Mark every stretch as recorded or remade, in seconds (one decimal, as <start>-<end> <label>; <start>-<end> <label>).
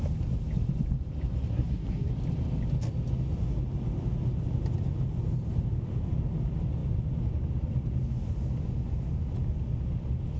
0.0-1.5 recorded; 1.5-2.1 remade; 2.1-10.4 recorded